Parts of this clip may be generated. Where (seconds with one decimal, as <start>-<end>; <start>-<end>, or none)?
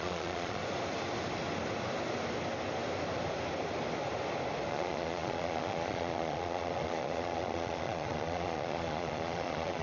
0.0-0.6; 4.7-9.8